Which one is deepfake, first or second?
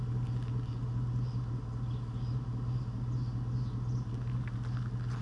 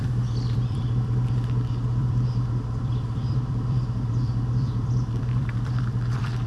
second